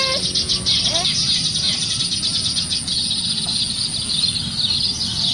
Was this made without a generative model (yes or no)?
yes